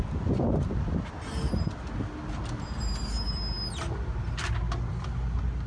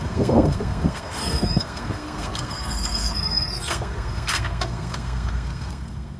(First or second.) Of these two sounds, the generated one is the second